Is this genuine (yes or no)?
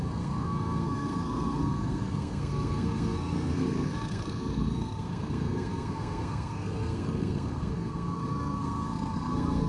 no